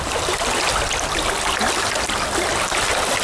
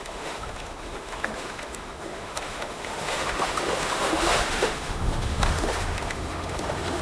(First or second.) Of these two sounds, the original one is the first